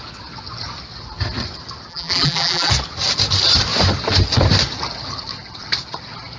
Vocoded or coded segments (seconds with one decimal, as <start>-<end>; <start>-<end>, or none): 1.9-2.7